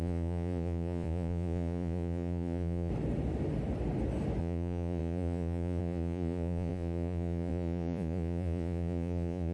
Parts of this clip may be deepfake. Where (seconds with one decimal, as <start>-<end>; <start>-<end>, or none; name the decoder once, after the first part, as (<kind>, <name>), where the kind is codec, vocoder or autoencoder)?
0.0-2.9 (vocoder, Vocos); 4.4-9.5